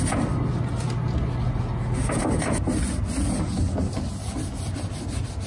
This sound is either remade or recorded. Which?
recorded